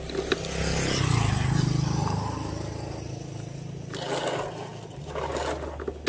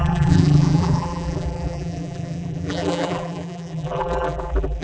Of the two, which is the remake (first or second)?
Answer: second